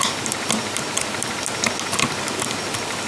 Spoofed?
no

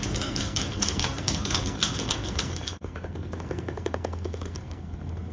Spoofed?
yes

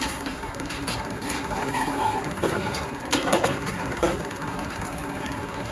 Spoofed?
yes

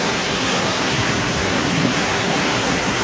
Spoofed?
yes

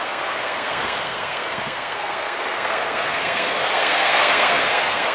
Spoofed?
yes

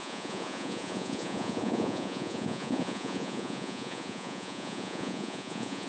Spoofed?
yes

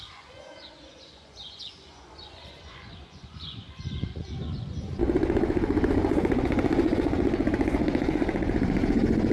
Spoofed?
yes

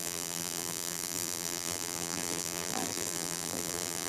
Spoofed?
yes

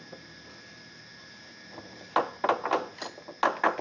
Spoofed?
no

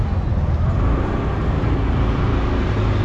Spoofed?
no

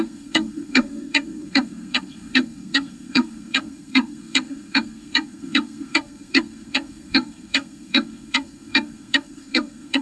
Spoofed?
yes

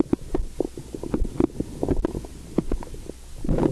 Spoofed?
no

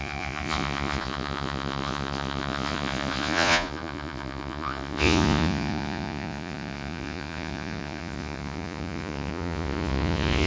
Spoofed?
yes